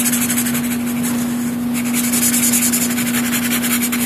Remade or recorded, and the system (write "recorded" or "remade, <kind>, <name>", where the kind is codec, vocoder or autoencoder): recorded